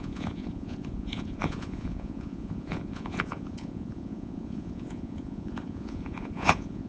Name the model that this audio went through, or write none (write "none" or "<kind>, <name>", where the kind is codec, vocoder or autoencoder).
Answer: vocoder, Vocos